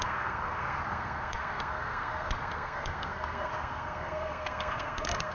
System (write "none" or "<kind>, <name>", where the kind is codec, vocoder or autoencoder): codec, SNAC